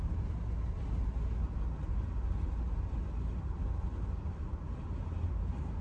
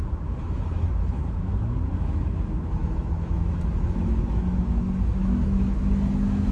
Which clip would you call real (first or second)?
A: first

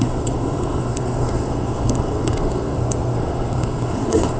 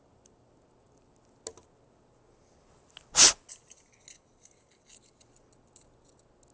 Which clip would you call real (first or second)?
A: second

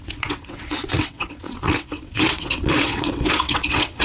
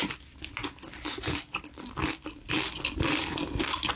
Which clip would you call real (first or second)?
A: second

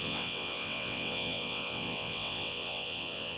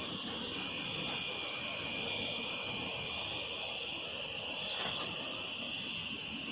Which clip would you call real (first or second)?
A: second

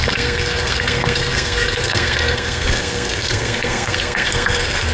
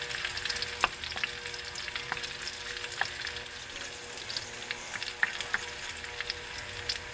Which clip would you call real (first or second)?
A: second